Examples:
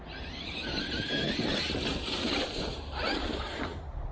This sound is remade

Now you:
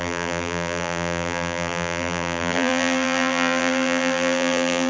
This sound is remade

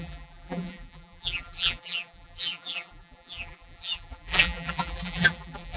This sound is remade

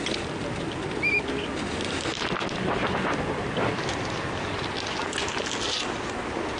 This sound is recorded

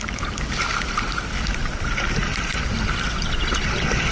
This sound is recorded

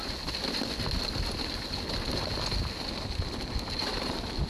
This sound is recorded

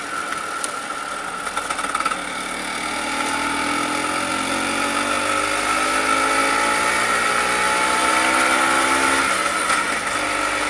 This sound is recorded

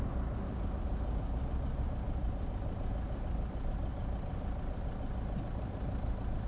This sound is recorded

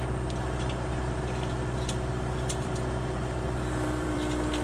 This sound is remade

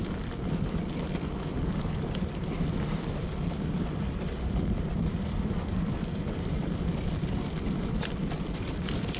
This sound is remade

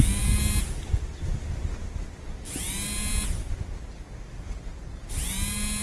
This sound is recorded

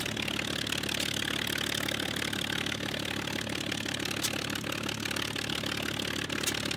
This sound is recorded